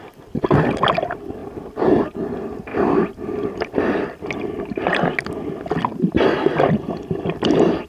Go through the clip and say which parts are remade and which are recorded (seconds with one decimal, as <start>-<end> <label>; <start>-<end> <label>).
0.0-2.7 recorded; 2.7-4.0 remade; 4.0-5.9 recorded; 5.9-7.9 remade